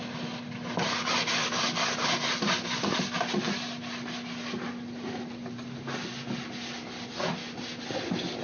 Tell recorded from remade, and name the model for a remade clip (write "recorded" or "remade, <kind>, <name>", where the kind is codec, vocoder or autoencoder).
recorded